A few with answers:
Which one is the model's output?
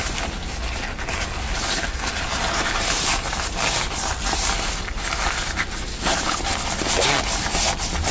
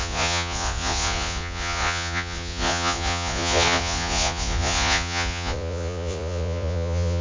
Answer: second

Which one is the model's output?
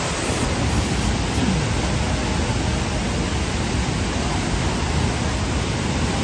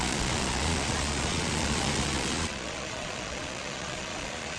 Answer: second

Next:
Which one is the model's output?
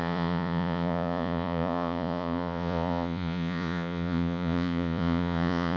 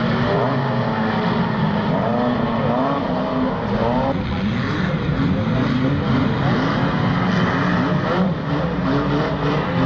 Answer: first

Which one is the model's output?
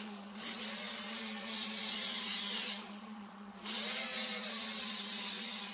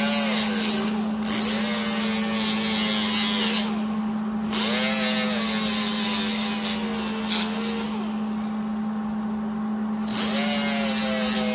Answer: first